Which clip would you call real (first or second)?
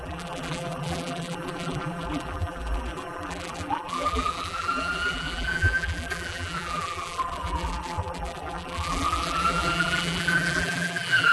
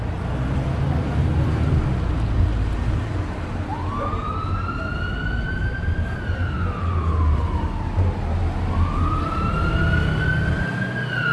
second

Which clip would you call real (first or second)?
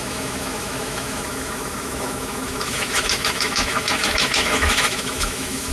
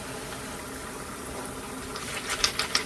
second